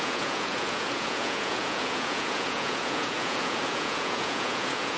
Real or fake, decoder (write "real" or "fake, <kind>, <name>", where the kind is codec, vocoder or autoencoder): fake, vocoder, Vocos